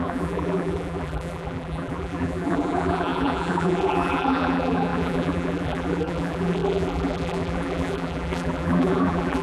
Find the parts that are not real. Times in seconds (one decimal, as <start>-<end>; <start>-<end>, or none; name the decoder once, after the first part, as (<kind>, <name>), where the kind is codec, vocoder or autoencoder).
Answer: 0.0-9.4 (vocoder, BigVGAN v2)